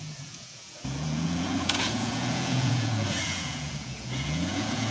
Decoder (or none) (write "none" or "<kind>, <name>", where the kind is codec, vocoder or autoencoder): vocoder, Vocos